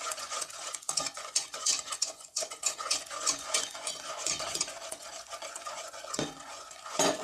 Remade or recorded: remade